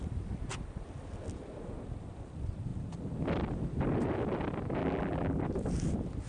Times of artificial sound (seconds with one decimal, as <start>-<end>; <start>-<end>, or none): 4.8-5.4